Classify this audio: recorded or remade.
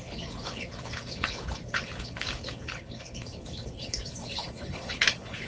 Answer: remade